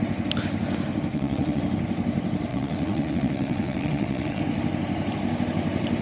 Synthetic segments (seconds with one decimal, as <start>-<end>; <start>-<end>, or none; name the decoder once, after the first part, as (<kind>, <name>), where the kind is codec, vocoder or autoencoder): 1.1-1.6 (vocoder, WaveNeXt); 2.5-4.4